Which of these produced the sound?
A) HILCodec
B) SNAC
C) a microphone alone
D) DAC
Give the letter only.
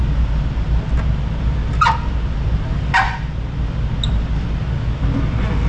C